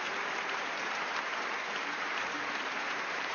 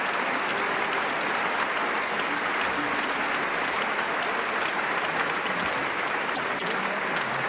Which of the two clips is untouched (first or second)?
second